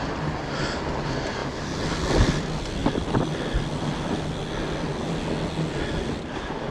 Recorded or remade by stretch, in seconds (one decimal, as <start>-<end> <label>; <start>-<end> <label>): 0.0-6.7 recorded